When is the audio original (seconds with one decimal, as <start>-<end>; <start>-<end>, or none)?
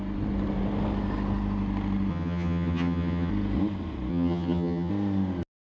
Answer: 0.0-2.1; 3.3-4.1; 4.9-5.6